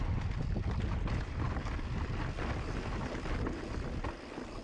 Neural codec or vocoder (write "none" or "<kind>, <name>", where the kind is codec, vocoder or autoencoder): none